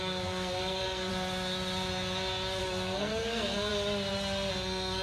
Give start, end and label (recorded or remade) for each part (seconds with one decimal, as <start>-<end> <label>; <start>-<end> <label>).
0.0-1.1 remade; 1.1-2.6 recorded; 2.6-3.7 remade; 3.7-4.5 recorded; 4.5-5.0 remade